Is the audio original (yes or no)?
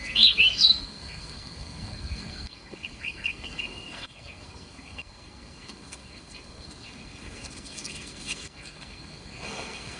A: no